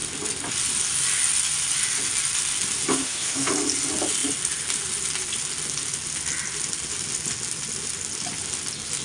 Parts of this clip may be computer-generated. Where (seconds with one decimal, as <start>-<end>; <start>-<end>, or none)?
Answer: 2.9-3.5